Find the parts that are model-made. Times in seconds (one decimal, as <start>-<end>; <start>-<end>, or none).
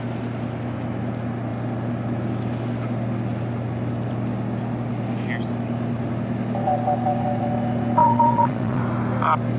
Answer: 8.0-8.8